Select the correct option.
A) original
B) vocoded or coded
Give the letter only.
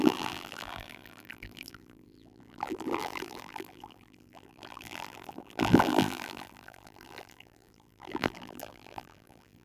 B